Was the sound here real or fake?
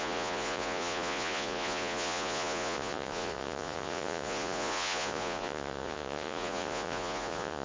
fake